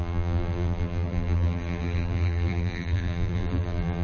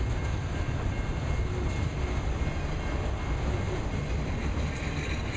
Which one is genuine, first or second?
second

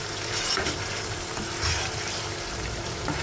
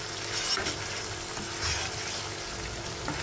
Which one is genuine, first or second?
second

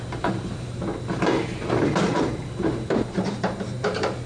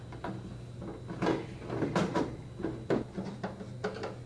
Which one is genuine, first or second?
second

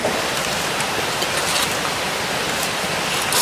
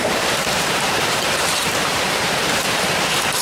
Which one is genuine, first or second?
first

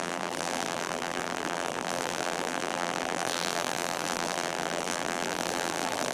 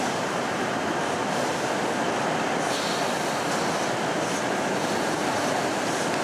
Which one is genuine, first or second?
second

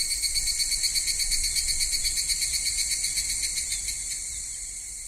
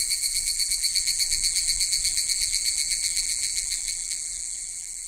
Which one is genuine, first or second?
first